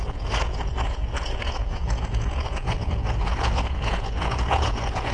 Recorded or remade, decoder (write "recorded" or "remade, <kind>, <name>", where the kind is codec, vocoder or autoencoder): remade, vocoder, Vocos